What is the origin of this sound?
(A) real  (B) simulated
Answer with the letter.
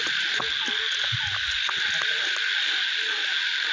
A